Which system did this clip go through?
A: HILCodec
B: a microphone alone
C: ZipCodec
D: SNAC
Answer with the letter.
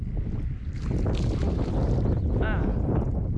B